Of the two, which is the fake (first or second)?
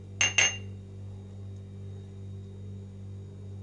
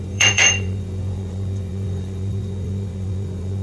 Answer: second